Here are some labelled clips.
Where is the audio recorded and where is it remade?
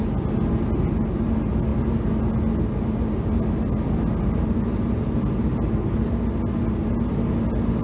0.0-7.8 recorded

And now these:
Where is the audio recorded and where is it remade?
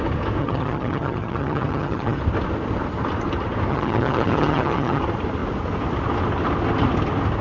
0.0-0.4 recorded; 0.4-2.2 remade; 2.2-3.7 recorded; 3.7-5.0 remade; 5.0-7.4 recorded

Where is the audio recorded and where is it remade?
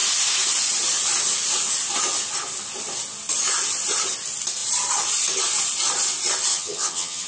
0.0-6.5 recorded; 6.5-7.3 remade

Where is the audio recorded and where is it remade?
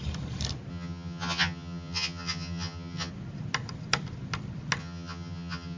0.0-0.7 recorded; 0.7-3.1 remade; 3.1-4.8 recorded; 4.8-5.8 remade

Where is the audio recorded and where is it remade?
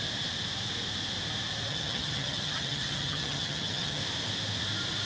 0.0-1.7 recorded; 1.7-4.0 remade; 4.0-5.1 recorded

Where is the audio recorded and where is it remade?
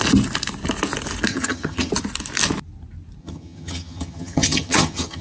0.0-1.3 recorded; 1.3-1.9 remade; 1.9-3.2 recorded; 3.2-5.2 remade